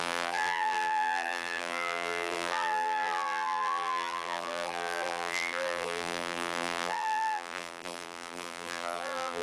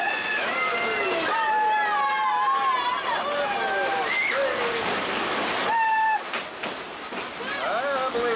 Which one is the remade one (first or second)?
first